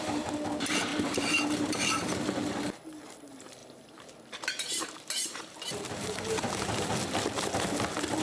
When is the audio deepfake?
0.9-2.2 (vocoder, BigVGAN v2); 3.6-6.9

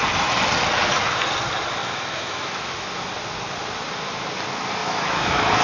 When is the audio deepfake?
1.8-3.0 (autoencoder, DAC-VAE); 4.8-5.6

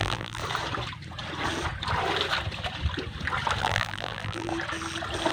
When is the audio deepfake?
0.0-0.4 (vocoder, BigVGAN v2); 3.6-4.5

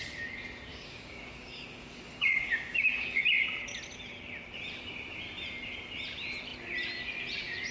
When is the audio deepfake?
0.7-3.2 (codec, DAC)

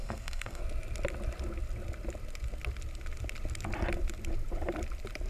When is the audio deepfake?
0.0-0.6 (codec, SNAC)

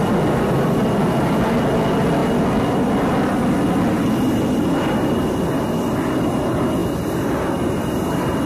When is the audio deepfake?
none